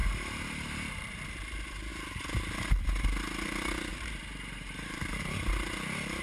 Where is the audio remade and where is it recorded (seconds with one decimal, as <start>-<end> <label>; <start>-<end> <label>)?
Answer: 0.0-1.2 remade; 1.2-3.9 recorded; 3.9-5.2 remade; 5.2-6.2 recorded